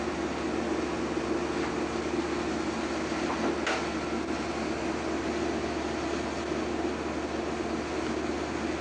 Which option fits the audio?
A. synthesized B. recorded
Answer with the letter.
B